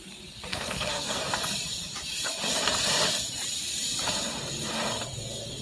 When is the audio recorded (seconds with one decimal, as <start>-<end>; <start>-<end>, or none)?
0.0-0.5; 1.2-5.6